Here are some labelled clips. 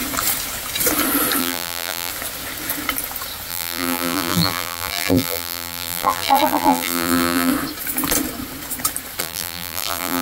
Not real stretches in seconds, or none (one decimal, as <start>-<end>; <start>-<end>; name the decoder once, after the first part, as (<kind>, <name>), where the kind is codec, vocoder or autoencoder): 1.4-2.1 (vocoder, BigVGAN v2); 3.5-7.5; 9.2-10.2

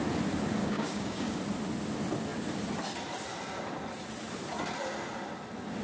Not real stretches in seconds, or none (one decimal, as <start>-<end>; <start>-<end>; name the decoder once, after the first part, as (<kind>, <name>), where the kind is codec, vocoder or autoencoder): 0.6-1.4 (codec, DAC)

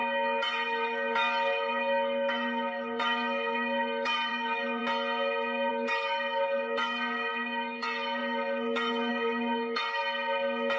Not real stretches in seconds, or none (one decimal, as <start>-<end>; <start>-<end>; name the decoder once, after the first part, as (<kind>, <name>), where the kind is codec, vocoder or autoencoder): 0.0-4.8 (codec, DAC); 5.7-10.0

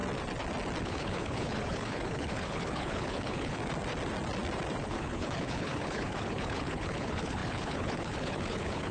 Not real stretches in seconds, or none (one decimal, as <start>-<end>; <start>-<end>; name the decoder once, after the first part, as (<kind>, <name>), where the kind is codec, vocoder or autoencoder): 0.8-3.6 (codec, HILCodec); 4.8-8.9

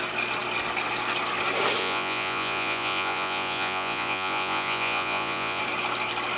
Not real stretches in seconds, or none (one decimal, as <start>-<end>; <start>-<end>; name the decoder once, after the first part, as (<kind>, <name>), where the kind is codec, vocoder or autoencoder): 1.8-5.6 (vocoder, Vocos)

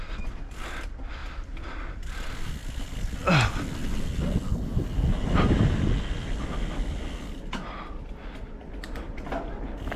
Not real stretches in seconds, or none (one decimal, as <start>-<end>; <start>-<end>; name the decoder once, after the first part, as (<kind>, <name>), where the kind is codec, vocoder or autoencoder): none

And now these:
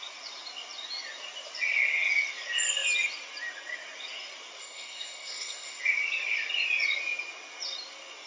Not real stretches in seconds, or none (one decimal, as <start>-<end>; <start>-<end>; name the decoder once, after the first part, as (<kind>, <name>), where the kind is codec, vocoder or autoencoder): 4.6-5.8 (codec, SNAC)

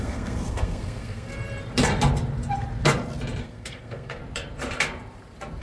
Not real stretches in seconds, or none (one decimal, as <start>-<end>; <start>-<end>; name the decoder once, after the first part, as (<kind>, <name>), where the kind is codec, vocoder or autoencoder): 0.0-1.3 (codec, SNAC); 3.4-4.2